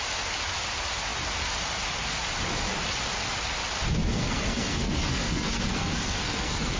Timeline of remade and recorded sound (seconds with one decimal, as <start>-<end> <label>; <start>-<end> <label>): 0.0-4.1 recorded; 4.1-6.8 remade

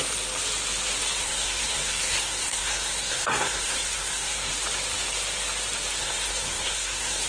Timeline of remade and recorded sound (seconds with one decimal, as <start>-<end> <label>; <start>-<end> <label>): 0.0-1.2 recorded; 1.2-4.5 remade; 4.5-6.0 recorded; 6.0-7.3 remade

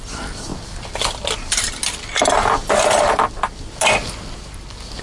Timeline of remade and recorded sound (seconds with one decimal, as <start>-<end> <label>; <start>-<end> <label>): 0.0-5.0 recorded

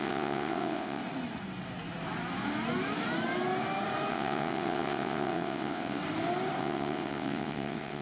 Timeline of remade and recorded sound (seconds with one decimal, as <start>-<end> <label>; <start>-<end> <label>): 0.0-1.0 remade; 1.0-4.1 recorded; 4.1-6.0 remade; 6.0-6.6 recorded; 6.6-8.0 remade

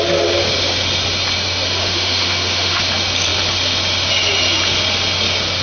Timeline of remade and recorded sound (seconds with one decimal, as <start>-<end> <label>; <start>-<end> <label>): 0.0-1.8 recorded; 1.8-2.8 remade; 2.8-5.6 recorded

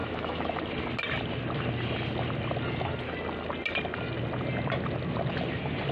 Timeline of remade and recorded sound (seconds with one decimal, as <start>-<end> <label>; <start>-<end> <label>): 0.0-0.7 remade; 0.7-5.9 recorded

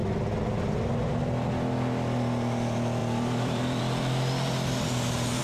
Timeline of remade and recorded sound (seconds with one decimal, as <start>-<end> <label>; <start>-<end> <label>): 0.0-3.0 recorded; 3.0-3.8 remade; 3.8-5.4 recorded